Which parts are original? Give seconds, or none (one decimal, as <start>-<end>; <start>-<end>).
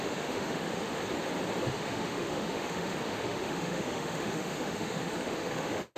1.0-1.6